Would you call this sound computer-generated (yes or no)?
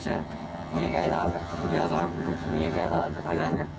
yes